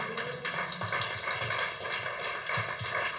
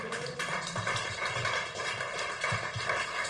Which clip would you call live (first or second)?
first